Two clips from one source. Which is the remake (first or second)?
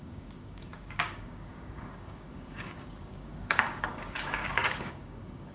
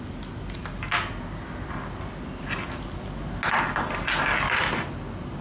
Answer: first